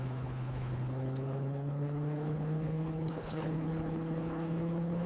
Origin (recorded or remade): remade